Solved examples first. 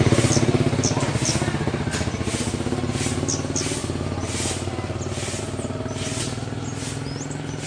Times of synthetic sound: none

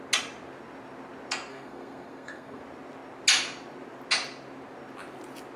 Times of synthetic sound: 1.5-2.6 (codec, SNAC)

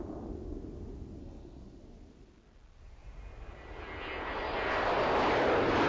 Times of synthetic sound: 1.2-1.8 (codec, SNAC)